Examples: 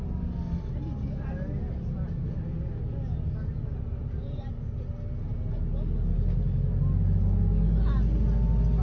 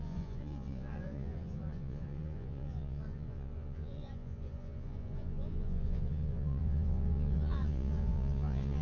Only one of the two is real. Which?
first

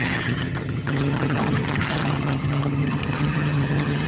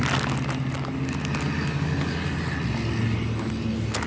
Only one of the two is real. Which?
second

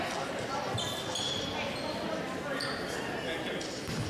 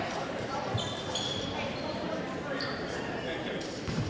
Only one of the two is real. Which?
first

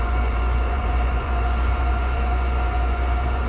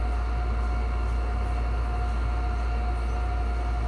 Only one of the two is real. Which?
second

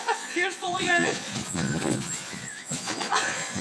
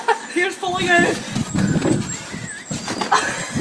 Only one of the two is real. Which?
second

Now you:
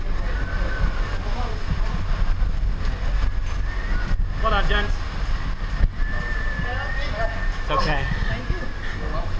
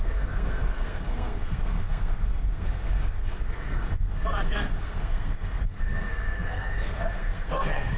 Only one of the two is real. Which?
first